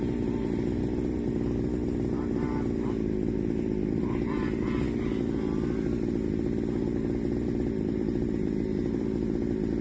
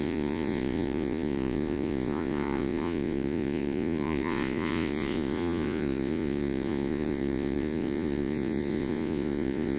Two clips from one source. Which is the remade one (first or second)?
second